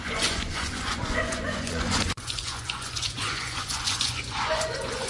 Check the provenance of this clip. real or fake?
fake